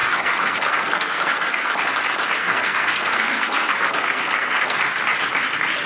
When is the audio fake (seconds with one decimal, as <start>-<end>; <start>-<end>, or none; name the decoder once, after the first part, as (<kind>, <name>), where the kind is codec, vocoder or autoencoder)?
0.0-1.7 (codec, SNAC); 2.4-4.8